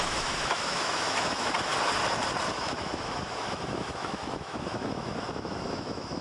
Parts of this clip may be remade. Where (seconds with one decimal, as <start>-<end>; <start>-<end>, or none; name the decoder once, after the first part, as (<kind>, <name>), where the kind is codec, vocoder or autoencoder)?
0.0-1.7 (autoencoder, DAC-VAE); 2.5-6.2